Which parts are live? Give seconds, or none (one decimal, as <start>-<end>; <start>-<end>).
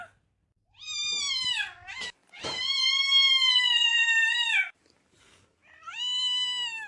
0.0-6.9